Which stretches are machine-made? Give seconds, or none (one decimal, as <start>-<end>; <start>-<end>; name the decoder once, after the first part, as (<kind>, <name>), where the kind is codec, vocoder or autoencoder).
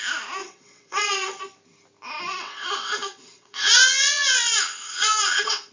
0.4-1.4 (vocoder, WaveNeXt); 2.3-5.7